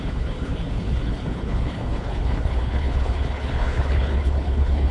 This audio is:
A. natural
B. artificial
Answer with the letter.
B